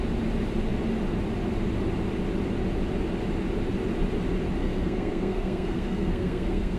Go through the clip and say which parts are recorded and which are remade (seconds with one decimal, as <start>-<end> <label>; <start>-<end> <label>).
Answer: 0.0-4.6 recorded; 4.6-6.8 remade